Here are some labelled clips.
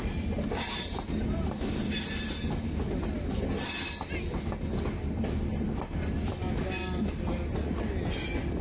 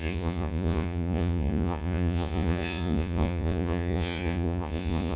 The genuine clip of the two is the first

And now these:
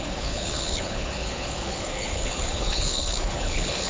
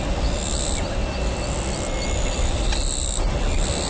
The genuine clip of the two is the second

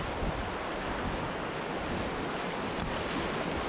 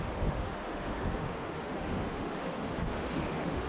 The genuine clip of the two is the first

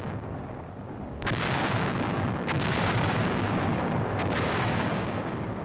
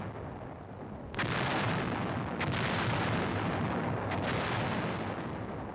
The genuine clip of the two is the second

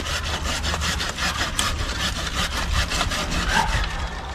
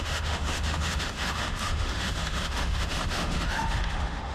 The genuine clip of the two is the first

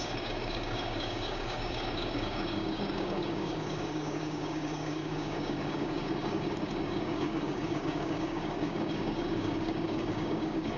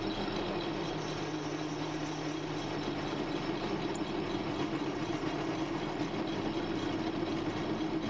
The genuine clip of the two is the second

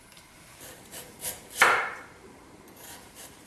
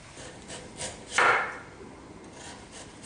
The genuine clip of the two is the second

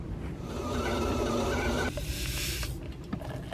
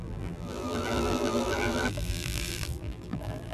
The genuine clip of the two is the first